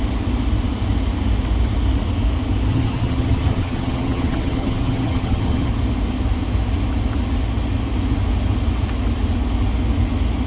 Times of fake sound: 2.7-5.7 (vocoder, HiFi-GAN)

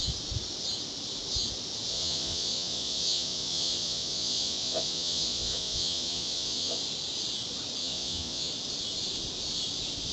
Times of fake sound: 1.9-6.8 (vocoder, Vocos); 7.8-8.5

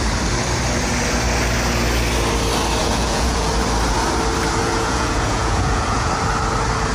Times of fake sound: 2.8-3.5 (vocoder, Vocos); 4.6-6.1

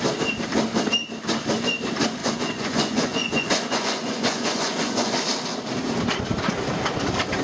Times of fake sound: 2.2-5.1 (vocoder, Vocos)

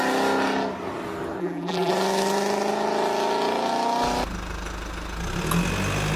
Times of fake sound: 1.4-1.9 (vocoder, BigVGAN v2)

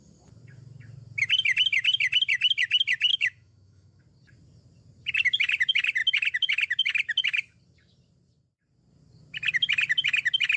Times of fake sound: 3.1-4.0 (autoencoder, DAC-VAE)

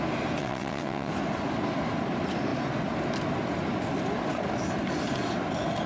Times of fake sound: 0.4-1.1 (vocoder, WaveNeXt)

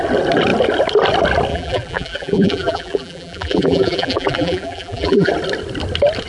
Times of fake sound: 1.5-5.3 (vocoder, BigVGAN v2)